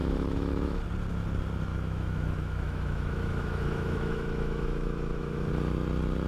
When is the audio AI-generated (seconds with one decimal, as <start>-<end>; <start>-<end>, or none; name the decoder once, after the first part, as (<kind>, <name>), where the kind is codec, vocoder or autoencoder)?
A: 0.0-0.8 (autoencoder, DAC-VAE); 1.7-5.5